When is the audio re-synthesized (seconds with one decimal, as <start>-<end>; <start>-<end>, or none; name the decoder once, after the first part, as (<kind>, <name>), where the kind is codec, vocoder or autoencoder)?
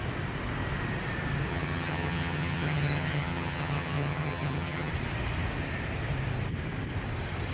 1.5-4.9 (vocoder, HiFi-GAN)